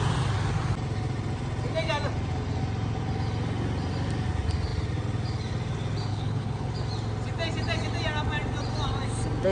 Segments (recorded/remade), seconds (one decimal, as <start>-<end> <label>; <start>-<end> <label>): 0.0-6.1 recorded; 6.1-6.7 remade; 6.7-9.5 recorded